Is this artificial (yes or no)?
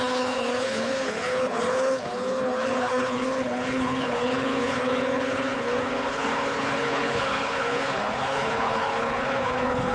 yes